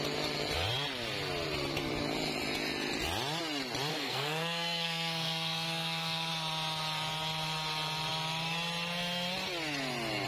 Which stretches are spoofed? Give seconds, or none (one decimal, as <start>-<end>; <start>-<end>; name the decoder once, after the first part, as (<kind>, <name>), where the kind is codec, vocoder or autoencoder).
3.9-6.3 (codec, SNAC)